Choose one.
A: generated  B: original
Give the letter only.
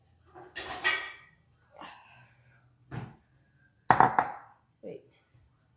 B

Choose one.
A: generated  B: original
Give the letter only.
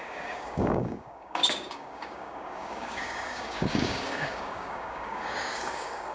A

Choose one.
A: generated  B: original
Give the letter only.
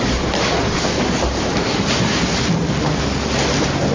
B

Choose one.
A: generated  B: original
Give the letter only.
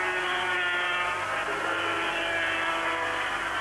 B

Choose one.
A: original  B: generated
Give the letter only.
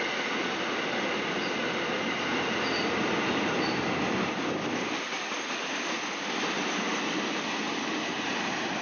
A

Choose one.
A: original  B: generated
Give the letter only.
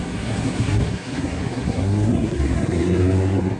B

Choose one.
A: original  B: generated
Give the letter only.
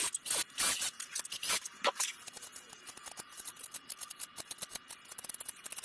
B